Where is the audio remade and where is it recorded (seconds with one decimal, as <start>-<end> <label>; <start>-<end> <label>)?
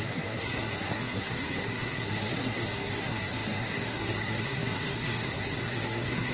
0.0-6.3 remade